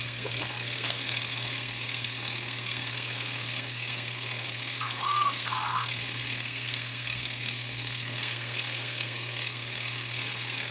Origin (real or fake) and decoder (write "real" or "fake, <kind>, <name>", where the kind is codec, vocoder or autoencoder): fake, codec, SNAC